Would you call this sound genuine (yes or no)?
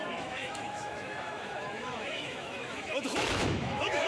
no